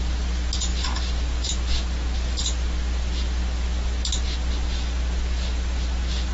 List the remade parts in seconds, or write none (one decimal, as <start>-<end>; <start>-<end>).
none